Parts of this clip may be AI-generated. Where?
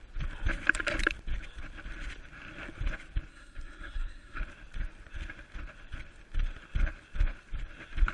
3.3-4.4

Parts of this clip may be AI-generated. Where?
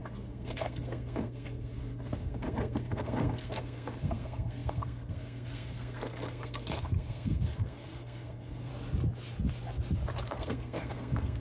0.0-8.7; 10.3-11.4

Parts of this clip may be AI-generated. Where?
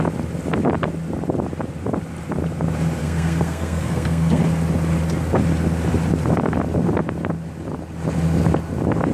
3.0-4.4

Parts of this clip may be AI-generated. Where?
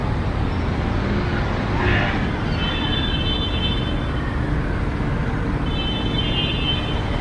none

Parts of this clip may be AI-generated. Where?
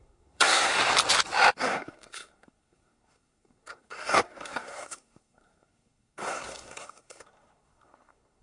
0.0-0.7; 1.6-8.4